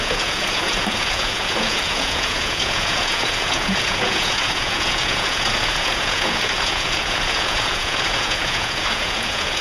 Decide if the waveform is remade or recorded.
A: remade